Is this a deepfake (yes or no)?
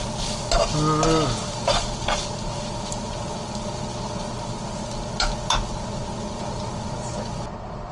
no